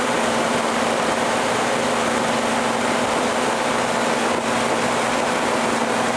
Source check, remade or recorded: recorded